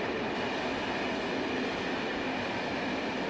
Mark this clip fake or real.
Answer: real